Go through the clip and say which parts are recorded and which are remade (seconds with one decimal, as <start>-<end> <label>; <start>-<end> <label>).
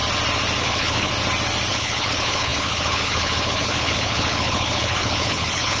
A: 0.0-0.6 recorded; 0.6-1.1 remade; 1.1-1.7 recorded; 1.7-5.8 remade